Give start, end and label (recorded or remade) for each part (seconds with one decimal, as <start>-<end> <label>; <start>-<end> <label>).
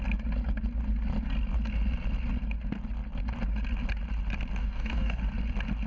0.0-4.6 recorded; 4.6-5.2 remade; 5.2-5.9 recorded